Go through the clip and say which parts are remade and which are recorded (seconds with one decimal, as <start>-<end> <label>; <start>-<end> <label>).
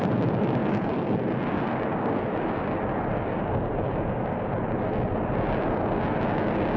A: 0.0-0.6 recorded; 0.6-1.3 remade; 1.3-6.8 recorded